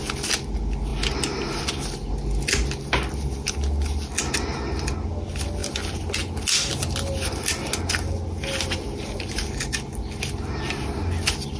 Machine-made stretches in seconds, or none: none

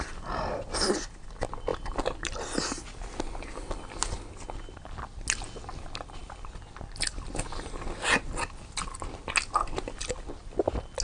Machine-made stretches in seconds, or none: 1.7-3.8 (vocoder, BigVGAN v2); 6.2-7.3